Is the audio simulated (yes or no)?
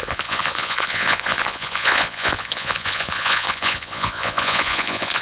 yes